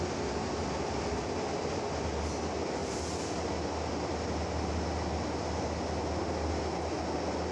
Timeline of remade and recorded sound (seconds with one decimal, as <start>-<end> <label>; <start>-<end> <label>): 0.0-7.5 recorded